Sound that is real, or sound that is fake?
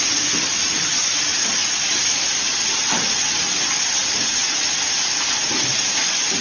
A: real